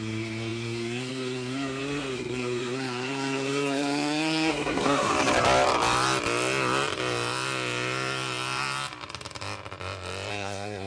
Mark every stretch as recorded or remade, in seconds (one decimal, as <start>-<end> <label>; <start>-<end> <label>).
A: 0.0-5.1 remade; 5.1-10.3 recorded; 10.3-10.9 remade